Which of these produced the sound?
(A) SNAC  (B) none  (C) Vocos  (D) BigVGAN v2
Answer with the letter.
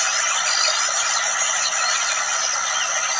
B